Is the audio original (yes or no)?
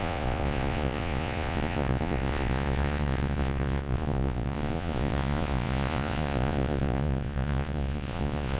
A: no